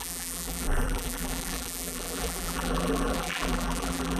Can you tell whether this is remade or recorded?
remade